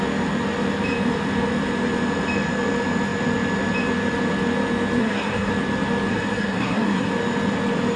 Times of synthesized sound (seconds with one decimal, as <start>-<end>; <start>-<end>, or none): 5.0-5.5; 6.1-7.1